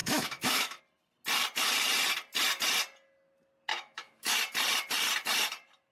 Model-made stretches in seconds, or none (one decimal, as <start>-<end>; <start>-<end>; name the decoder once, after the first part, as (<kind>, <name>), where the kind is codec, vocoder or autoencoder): 0.0-0.8 (autoencoder, DAC-VAE); 3.7-4.4